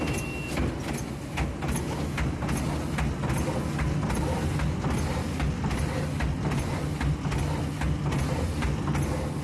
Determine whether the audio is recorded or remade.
recorded